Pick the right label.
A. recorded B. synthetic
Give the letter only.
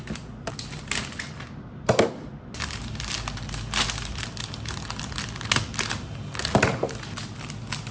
A